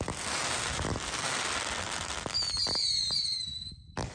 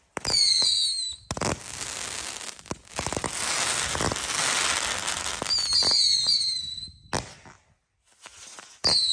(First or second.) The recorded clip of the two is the second